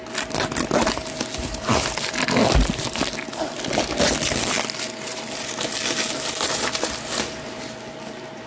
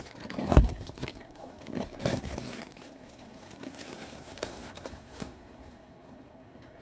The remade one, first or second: second